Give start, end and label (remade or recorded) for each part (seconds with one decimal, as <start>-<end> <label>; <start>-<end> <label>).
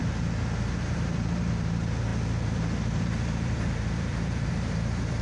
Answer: 0.0-0.7 recorded; 0.7-5.2 remade